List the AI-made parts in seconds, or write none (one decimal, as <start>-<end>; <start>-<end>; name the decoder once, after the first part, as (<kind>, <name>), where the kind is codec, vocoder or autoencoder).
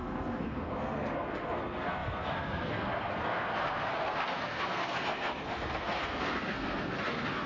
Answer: 0.0-7.5 (codec, SNAC)